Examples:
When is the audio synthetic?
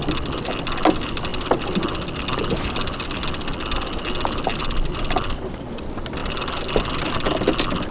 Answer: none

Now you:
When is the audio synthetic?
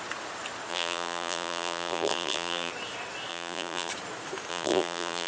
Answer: 0.7-2.7 (vocoder, BigVGAN v2); 3.3-3.9; 4.5-5.3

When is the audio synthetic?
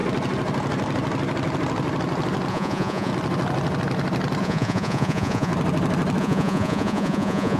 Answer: 2.5-3.1 (vocoder, Vocos); 4.4-5.5; 6.2-7.6